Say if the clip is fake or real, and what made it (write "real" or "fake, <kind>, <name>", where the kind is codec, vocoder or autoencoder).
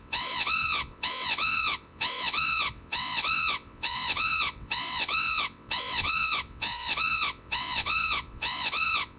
fake, vocoder, WaveNeXt